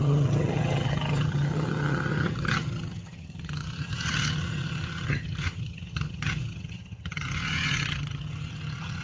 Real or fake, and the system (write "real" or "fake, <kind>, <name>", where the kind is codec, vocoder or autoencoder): fake, vocoder, HiFi-GAN